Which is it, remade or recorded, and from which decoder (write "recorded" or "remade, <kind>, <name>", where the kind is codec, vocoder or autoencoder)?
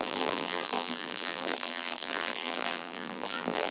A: remade, vocoder, BigVGAN v2